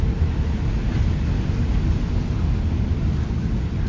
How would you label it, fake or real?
real